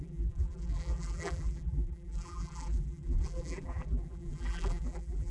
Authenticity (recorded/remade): remade